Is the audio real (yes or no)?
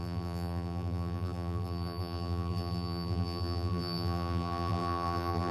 no